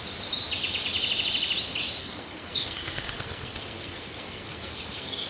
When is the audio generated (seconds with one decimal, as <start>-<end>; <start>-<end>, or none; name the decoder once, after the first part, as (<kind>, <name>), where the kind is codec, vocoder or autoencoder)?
2.0-5.3 (codec, SNAC)